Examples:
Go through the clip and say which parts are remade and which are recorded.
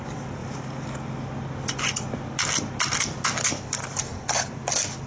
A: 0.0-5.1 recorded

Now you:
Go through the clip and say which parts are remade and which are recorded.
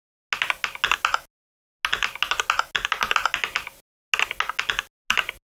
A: 0.0-5.5 recorded